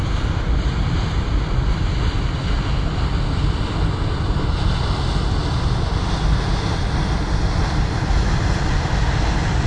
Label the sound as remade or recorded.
recorded